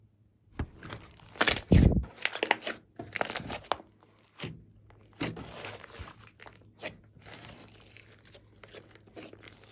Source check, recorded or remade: recorded